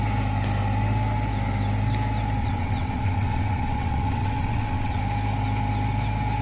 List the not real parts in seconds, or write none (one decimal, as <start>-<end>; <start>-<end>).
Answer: 2.4-5.0